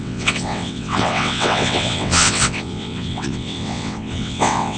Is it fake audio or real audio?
fake